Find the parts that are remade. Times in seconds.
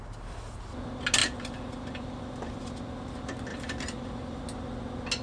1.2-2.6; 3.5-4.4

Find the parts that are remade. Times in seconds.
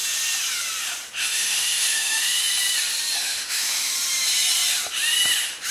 1.2-2.4; 3.2-3.9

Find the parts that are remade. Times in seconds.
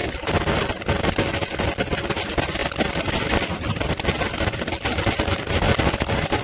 none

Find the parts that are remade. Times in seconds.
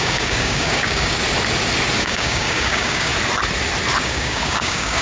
0.0-1.2; 2.0-3.1; 4.0-5.0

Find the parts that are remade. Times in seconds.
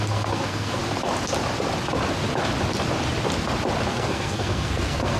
0.0-0.8; 3.9-5.2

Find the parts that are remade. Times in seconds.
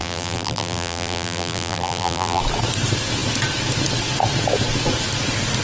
0.0-2.4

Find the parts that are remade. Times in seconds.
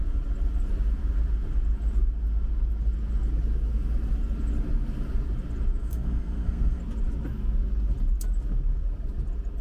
5.8-6.8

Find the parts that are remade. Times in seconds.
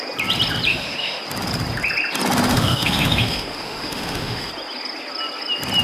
0.7-1.2; 2.5-4.5